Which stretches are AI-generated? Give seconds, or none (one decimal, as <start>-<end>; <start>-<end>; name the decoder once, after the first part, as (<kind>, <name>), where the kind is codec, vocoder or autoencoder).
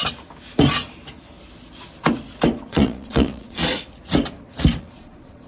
2.7-3.6 (vocoder, Vocos); 4.8-5.5